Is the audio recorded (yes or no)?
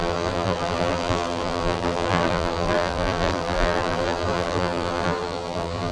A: no